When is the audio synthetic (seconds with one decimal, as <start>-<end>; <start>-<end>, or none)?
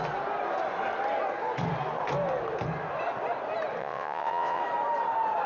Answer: 3.8-4.6